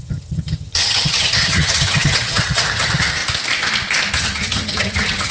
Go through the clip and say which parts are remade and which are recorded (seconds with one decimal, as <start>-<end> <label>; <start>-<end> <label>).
0.0-3.2 remade; 3.2-4.1 recorded; 4.1-5.3 remade